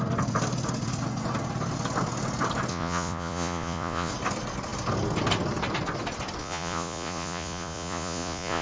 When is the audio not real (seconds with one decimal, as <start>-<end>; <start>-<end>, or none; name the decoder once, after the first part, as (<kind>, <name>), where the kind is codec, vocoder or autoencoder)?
2.7-4.1 (vocoder, Vocos); 6.4-8.6